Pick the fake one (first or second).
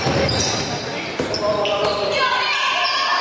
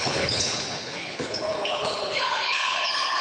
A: second